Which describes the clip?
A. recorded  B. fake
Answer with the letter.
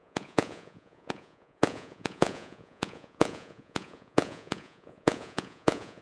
B